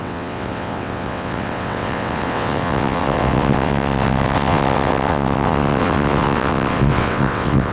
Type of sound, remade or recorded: remade